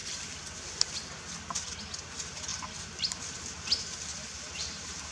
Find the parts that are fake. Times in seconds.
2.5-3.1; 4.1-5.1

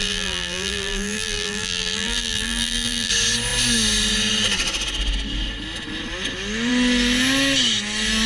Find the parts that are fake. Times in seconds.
0.0-3.1